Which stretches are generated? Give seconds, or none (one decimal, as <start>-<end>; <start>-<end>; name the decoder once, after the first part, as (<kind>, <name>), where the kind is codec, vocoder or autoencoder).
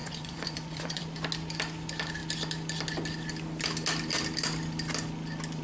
0.0-1.0 (vocoder, Vocos)